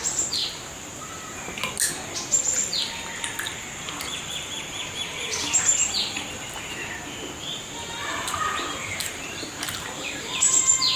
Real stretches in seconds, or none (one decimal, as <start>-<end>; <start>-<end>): 0.0-0.4; 1.5-8.0